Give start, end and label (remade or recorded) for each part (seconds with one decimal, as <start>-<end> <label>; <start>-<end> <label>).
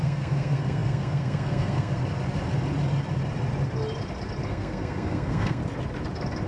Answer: 0.0-2.0 remade; 2.0-4.5 recorded; 4.5-5.6 remade; 5.6-6.5 recorded